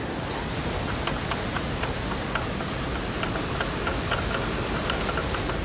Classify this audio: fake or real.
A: real